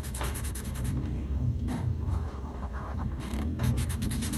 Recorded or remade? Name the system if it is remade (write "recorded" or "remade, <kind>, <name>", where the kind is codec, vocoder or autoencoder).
remade, codec, DAC